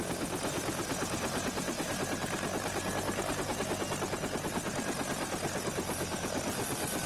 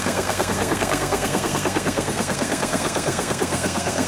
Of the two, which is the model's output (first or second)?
second